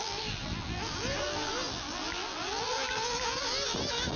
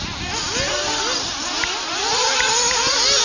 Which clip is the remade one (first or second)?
first